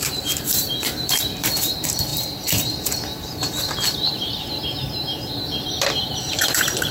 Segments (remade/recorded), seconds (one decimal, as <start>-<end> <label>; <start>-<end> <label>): 0.0-6.9 remade